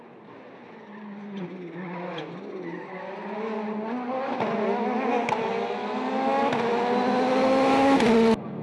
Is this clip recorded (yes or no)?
yes